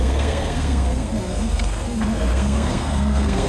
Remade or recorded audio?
remade